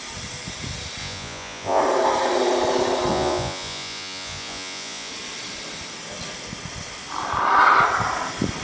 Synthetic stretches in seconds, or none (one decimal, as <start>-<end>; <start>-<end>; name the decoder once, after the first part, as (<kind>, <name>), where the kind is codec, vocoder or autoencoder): 1.0-1.8 (vocoder, Vocos); 3.1-5.1